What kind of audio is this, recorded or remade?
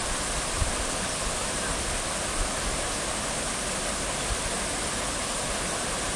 recorded